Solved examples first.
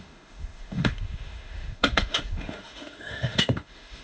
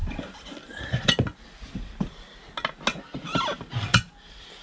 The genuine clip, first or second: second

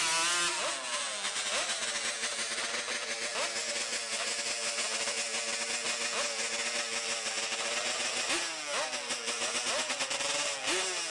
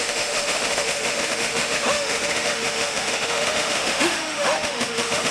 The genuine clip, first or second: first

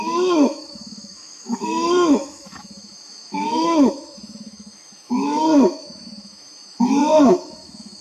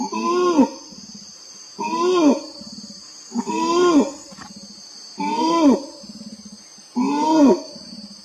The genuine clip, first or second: second